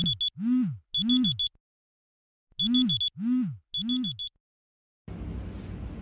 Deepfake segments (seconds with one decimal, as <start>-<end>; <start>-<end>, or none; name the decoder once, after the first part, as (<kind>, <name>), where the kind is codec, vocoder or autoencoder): none